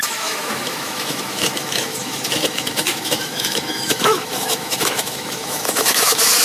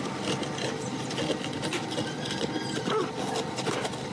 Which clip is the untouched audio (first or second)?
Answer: second